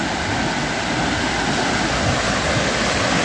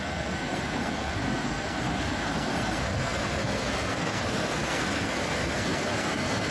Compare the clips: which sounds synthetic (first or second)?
second